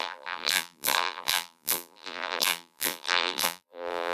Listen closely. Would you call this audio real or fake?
fake